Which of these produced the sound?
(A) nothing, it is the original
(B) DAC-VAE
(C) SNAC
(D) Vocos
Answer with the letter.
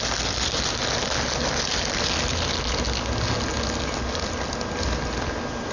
A